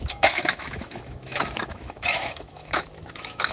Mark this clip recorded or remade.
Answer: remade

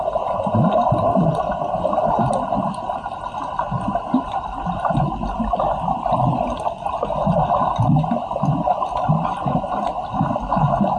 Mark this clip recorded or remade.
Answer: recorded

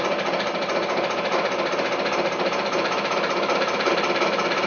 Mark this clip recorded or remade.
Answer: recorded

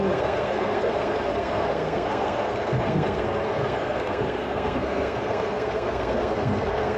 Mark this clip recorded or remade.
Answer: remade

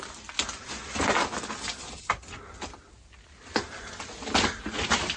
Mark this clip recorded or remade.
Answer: recorded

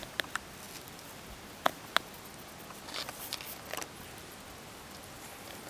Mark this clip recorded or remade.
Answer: recorded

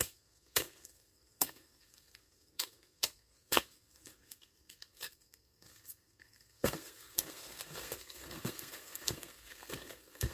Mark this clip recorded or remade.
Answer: remade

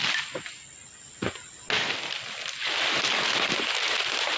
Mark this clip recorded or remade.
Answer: recorded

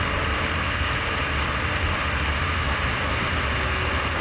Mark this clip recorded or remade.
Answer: recorded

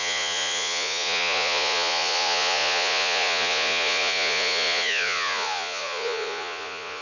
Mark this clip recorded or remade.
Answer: remade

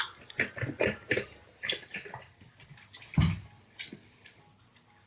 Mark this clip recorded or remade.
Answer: recorded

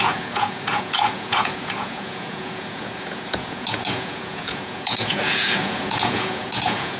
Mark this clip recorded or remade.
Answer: remade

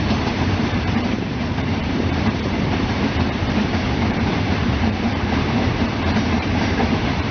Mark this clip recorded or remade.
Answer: remade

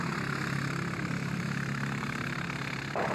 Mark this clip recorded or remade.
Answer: recorded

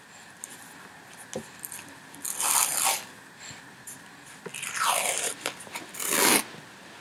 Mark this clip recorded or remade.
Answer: recorded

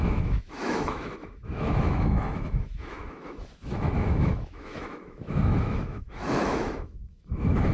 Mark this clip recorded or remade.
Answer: remade